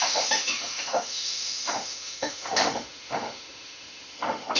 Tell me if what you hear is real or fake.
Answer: fake